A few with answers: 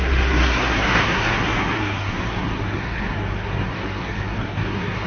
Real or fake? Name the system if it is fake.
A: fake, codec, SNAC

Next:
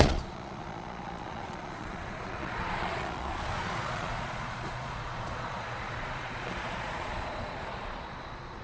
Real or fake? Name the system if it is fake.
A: fake, vocoder, Vocos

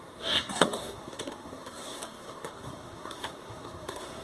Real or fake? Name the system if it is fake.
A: fake, codec, SNAC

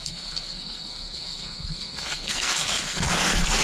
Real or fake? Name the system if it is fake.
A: fake, codec, SNAC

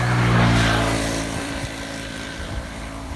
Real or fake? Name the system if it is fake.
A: fake, vocoder, BigVGAN v2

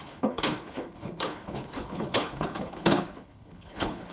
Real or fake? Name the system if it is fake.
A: fake, codec, HILCodec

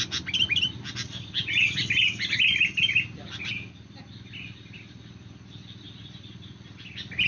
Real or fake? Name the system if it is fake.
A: real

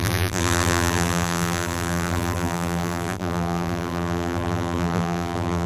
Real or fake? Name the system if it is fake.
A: fake, vocoder, BigVGAN v2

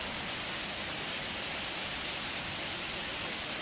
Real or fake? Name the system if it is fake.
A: real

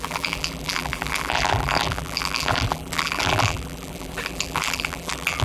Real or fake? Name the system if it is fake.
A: fake, vocoder, BigVGAN v2